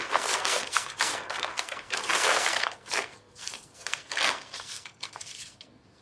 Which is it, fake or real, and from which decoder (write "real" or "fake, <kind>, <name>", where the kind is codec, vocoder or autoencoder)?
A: fake, codec, SNAC